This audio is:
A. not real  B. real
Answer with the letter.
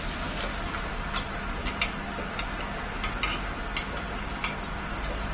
B